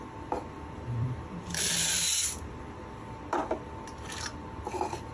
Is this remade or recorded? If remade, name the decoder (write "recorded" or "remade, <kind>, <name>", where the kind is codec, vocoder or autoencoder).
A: remade, vocoder, BigVGAN v2